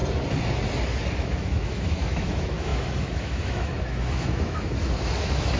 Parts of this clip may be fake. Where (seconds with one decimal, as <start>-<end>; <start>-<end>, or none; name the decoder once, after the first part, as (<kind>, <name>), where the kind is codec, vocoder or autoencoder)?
1.1-5.6 (autoencoder, DAC-VAE)